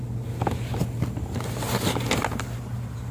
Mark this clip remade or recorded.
recorded